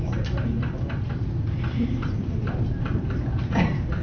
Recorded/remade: remade